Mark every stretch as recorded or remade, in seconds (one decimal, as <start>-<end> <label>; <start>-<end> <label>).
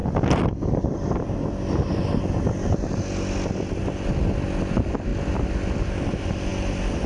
0.0-4.1 recorded; 4.1-5.1 remade; 5.1-5.8 recorded; 5.8-6.5 remade; 6.5-7.1 recorded